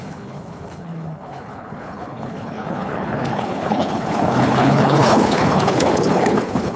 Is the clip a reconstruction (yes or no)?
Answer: yes